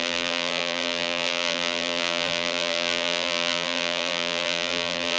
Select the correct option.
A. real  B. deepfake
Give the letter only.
B